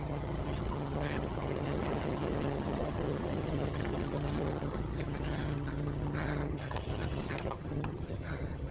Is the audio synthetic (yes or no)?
yes